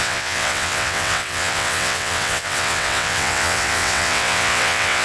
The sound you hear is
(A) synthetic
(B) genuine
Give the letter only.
A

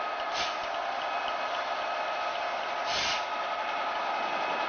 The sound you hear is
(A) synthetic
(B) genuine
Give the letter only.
B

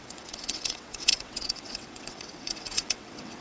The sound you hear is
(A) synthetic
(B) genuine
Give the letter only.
A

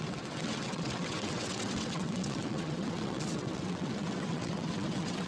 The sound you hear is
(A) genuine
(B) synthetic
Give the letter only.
B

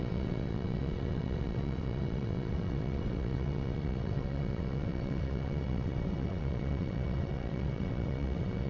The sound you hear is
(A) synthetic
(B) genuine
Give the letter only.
A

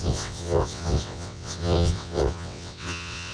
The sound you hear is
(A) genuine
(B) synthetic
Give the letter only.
B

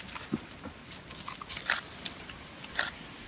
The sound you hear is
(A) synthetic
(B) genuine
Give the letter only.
B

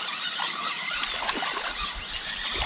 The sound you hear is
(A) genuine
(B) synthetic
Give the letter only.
A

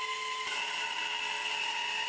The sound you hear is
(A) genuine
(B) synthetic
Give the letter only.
A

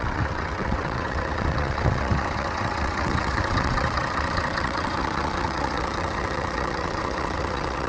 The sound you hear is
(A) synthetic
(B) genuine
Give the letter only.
A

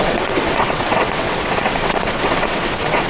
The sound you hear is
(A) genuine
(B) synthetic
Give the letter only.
B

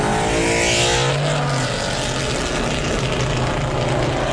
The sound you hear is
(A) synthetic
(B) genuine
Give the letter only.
B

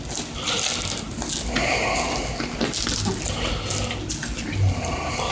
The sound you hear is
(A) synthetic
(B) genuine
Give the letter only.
B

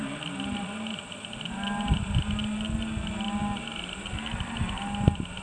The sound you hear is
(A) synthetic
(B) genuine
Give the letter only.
B